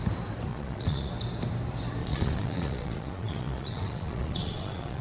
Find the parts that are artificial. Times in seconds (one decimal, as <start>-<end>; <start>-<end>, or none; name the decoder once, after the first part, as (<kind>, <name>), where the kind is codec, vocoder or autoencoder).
0.5-1.1 (vocoder, Vocos); 2.0-5.0